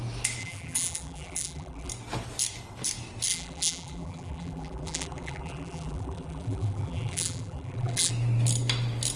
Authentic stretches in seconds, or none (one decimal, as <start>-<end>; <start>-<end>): 0.0-0.4; 1.9-3.3; 8.1-9.2